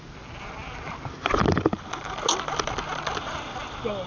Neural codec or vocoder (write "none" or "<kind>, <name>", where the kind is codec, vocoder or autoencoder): none